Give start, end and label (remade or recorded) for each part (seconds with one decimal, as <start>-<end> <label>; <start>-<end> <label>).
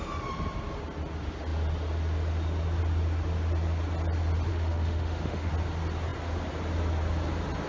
0.0-4.5 recorded; 4.5-5.5 remade; 5.5-7.7 recorded